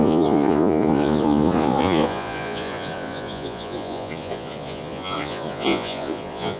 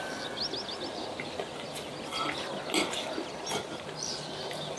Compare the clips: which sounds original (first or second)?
second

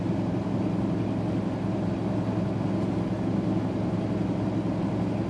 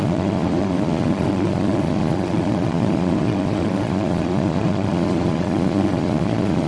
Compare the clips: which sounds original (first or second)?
first